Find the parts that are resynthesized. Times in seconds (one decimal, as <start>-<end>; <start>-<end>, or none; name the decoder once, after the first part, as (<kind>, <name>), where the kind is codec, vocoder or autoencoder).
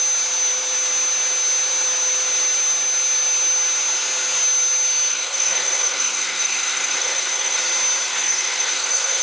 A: 5.1-7.6 (codec, SNAC); 8.1-9.2